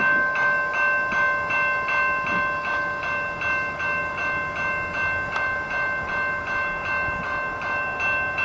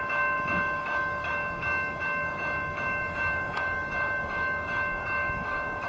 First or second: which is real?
first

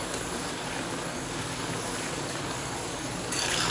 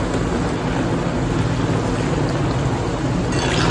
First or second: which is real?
second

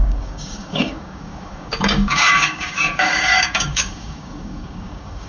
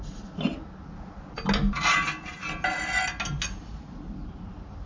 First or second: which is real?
second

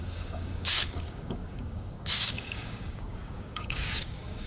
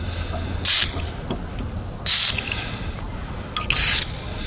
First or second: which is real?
second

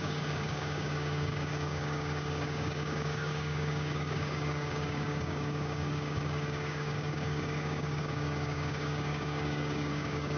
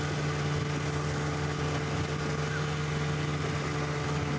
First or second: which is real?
second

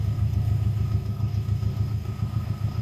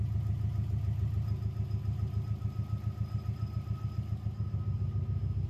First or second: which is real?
second